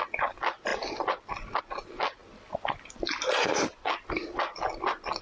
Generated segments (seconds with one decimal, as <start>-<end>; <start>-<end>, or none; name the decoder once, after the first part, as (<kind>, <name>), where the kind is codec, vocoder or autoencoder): none